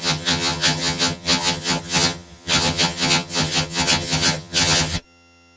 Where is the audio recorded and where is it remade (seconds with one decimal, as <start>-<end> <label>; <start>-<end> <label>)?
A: 0.0-5.6 remade